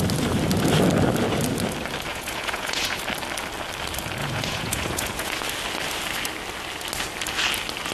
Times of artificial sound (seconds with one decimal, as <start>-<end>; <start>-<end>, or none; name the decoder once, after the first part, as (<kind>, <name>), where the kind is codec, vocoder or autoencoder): 2.1-3.0 (vocoder, Vocos); 4.2-5.3